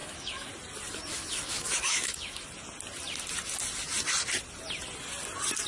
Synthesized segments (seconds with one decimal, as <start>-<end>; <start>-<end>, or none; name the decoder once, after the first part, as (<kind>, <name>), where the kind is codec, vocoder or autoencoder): 0.0-0.5 (autoencoder, DAC-VAE); 1.1-2.5